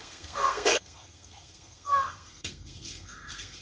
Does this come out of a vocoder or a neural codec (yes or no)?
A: yes